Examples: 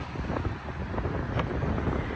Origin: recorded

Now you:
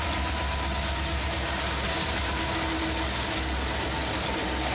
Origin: recorded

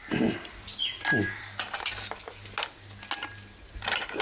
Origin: recorded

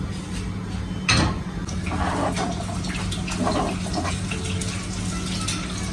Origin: recorded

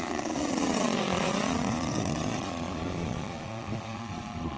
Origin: remade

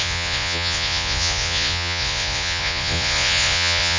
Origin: remade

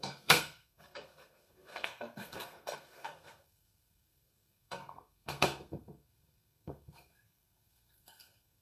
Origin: remade